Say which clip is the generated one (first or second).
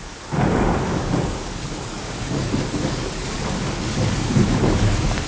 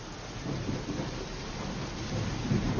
first